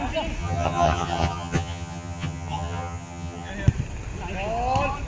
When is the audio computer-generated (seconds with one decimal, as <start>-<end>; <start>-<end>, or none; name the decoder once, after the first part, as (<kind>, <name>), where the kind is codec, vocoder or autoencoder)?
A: 0.4-3.5 (vocoder, HiFi-GAN)